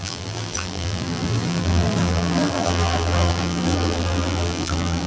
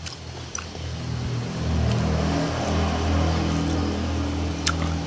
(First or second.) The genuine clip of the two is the second